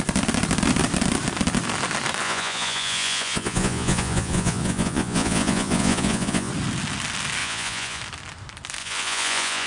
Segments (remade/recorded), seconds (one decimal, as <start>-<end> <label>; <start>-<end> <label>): 0.0-2.2 recorded; 2.2-6.5 remade; 6.5-7.4 recorded; 7.4-8.0 remade; 8.0-8.8 recorded; 8.8-9.7 remade